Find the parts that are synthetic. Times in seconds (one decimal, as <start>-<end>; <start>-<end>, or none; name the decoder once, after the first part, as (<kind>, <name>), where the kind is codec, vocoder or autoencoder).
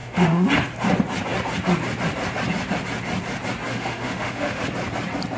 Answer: 0.0-0.5 (autoencoder, DAC-VAE); 3.7-4.6